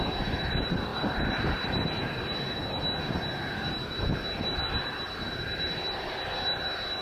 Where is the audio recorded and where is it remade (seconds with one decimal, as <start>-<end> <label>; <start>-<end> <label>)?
0.0-7.0 recorded